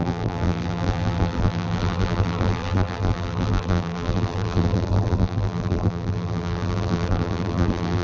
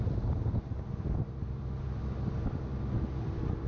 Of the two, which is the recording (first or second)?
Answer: second